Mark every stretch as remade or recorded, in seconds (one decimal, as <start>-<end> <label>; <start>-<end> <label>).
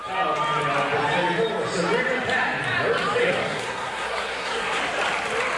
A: 0.0-3.2 recorded; 3.2-4.8 remade; 4.8-5.6 recorded